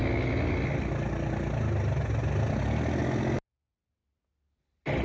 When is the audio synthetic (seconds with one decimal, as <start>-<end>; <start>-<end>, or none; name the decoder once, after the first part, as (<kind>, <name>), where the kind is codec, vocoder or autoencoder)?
none